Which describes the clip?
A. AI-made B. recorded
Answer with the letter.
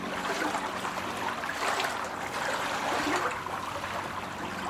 B